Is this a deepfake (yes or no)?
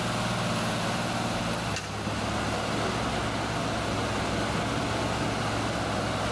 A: no